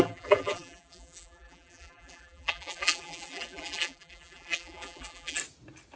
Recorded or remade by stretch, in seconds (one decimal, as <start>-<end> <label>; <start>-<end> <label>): 0.0-5.4 remade; 5.4-6.0 recorded